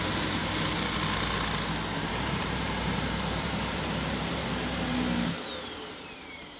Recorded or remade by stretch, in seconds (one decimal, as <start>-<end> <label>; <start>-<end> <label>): 0.0-0.4 remade; 0.4-2.1 recorded; 2.1-4.4 remade; 4.4-5.9 recorded; 5.9-6.6 remade